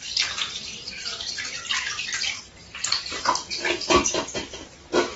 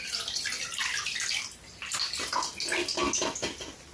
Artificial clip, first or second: first